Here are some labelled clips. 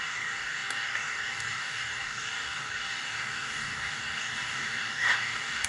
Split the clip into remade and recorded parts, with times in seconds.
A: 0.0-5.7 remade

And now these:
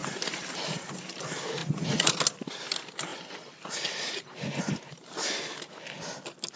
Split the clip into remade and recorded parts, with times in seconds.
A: 0.0-1.6 recorded; 1.6-2.1 remade; 2.1-6.6 recorded

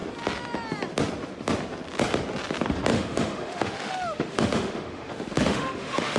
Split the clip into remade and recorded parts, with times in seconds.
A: 0.0-2.9 recorded; 2.9-6.2 remade

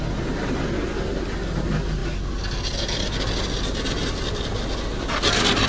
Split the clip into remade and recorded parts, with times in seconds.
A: 0.0-5.7 recorded

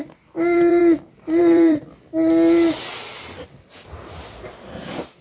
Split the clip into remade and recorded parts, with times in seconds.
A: 0.0-0.8 remade; 0.8-1.4 recorded; 1.4-2.1 remade; 2.1-3.4 recorded; 3.4-5.2 remade

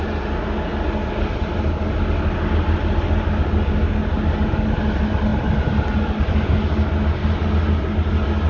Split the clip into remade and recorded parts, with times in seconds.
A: 0.0-8.5 recorded

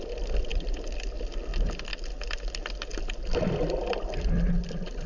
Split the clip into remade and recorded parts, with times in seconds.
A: 0.0-5.1 recorded

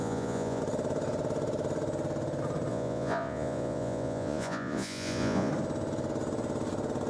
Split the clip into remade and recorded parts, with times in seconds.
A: 0.0-0.6 remade; 0.6-2.7 recorded; 2.7-5.5 remade; 5.5-7.1 recorded